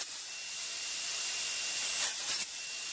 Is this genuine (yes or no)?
yes